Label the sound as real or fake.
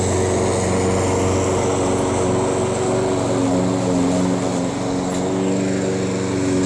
real